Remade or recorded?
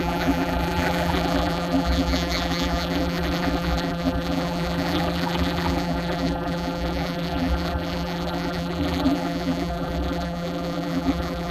remade